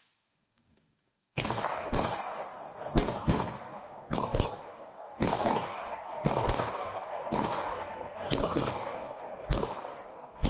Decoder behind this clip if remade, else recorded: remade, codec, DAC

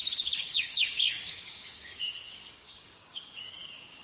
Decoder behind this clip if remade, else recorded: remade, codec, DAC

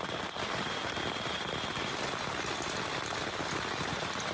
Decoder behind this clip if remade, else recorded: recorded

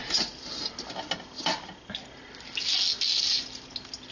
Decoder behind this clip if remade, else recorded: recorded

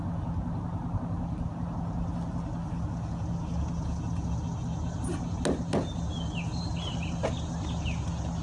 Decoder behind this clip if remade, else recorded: recorded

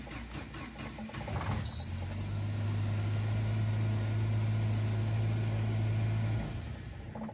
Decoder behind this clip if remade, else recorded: recorded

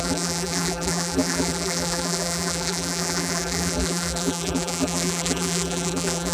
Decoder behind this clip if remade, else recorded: remade, vocoder, BigVGAN v2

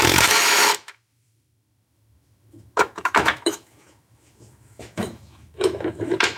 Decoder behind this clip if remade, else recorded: remade, autoencoder, DAC-VAE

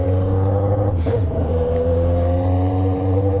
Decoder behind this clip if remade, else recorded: remade, vocoder, BigVGAN v2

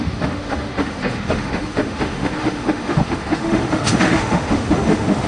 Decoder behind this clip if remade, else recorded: remade, autoencoder, DAC-VAE